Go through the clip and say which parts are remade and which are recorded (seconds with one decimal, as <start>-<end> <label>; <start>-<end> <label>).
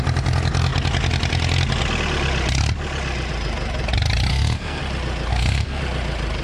0.0-4.3 recorded; 4.3-4.8 remade; 4.8-5.3 recorded; 5.3-5.8 remade; 5.8-6.4 recorded